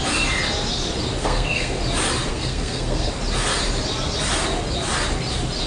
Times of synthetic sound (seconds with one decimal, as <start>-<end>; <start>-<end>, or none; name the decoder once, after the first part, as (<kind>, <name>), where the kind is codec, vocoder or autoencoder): 1.2-1.8 (codec, SNAC); 2.3-3.1

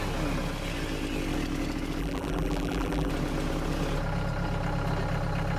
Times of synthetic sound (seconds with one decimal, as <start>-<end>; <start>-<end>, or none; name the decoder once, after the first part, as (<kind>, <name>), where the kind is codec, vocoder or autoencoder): 2.0-3.1 (vocoder, BigVGAN v2)